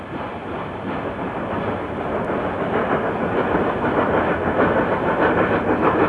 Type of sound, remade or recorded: recorded